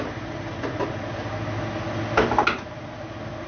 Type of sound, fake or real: real